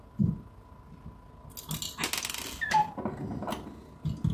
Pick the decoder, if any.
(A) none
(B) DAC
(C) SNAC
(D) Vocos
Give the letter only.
A